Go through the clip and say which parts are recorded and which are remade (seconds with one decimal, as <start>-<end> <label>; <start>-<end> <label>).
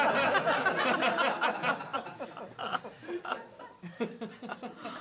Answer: 0.0-5.0 recorded